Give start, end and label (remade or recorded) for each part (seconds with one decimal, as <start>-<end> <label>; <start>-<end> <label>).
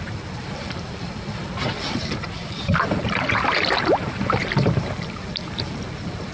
0.0-6.3 remade